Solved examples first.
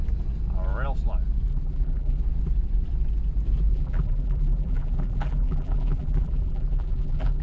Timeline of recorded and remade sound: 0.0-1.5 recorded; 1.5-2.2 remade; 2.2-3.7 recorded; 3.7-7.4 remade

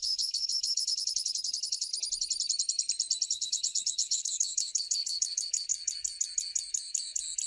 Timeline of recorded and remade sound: 0.0-1.9 remade; 1.9-3.3 recorded; 3.3-5.7 remade; 5.7-7.5 recorded

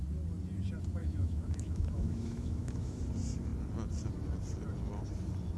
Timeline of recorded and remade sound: 0.0-1.0 recorded; 1.0-3.0 remade; 3.0-5.6 recorded

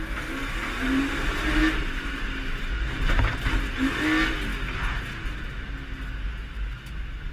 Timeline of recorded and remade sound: 0.0-7.3 recorded

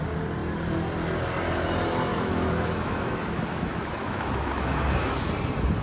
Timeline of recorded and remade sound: 0.0-2.1 recorded; 2.1-5.3 remade; 5.3-5.8 recorded

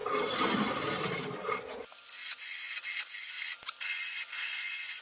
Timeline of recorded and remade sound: 0.0-5.0 recorded

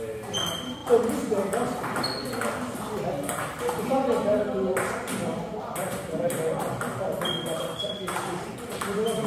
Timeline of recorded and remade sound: 0.0-9.3 recorded